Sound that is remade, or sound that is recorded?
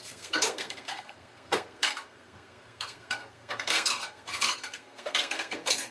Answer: remade